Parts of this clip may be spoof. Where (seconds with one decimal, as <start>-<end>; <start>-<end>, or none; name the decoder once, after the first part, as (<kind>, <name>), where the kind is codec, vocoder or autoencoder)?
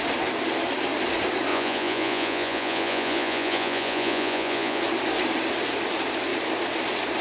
1.5-4.8 (vocoder, Vocos)